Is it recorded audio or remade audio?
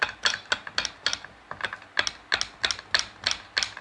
recorded